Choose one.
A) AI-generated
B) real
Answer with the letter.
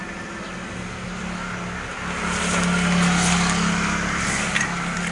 B